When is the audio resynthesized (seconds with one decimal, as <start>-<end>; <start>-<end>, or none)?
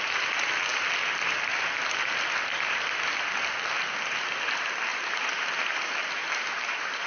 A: 4.9-5.5; 6.2-7.1